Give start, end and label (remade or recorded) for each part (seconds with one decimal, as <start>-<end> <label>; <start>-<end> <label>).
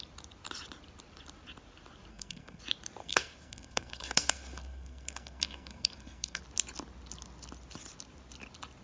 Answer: 0.0-2.1 recorded; 2.1-2.6 remade; 2.6-3.0 recorded; 3.0-6.4 remade; 6.4-8.8 recorded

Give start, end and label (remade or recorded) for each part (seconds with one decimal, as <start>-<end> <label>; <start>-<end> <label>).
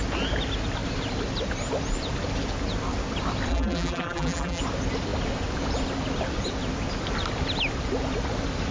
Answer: 0.0-3.5 recorded; 3.5-4.6 remade; 4.6-8.7 recorded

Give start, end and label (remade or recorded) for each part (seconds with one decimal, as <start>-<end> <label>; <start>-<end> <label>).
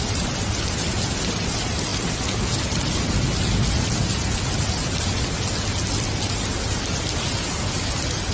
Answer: 0.0-8.3 recorded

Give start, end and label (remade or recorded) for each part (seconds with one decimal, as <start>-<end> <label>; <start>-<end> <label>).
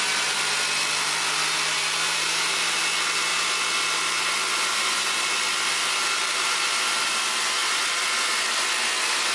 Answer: 0.0-9.3 recorded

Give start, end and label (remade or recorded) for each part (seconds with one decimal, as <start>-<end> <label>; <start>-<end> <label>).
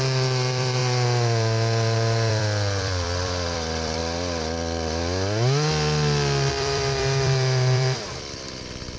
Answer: 0.0-0.8 remade; 0.8-2.3 recorded; 2.3-4.0 remade; 4.0-6.5 recorded; 6.5-9.0 remade